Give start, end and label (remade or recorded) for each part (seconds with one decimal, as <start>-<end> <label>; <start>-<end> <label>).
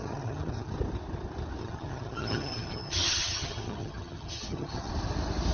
0.0-0.7 remade; 0.7-1.6 recorded; 1.6-4.9 remade; 4.9-5.5 recorded